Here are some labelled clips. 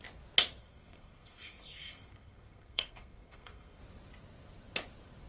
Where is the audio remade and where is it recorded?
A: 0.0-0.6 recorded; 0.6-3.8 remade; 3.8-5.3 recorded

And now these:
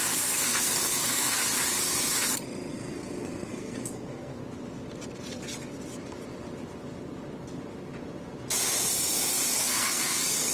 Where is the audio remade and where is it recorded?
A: 0.0-1.4 remade; 1.4-2.7 recorded; 2.7-4.4 remade; 4.4-9.6 recorded; 9.6-10.5 remade

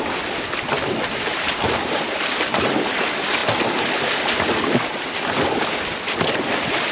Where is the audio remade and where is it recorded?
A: 0.0-1.3 recorded; 1.3-2.9 remade; 2.9-6.9 recorded